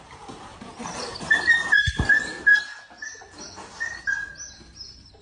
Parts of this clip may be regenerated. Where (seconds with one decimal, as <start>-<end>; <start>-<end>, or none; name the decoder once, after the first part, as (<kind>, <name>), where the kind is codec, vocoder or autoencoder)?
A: 0.5-1.5 (vocoder, BigVGAN v2)